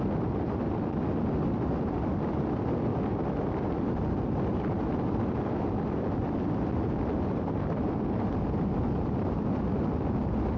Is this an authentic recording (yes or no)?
yes